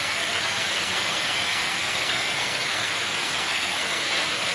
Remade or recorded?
remade